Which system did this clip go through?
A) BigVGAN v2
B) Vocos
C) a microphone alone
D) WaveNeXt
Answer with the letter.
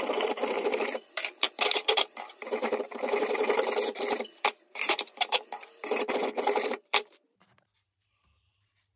A